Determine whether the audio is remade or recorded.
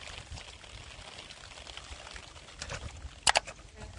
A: recorded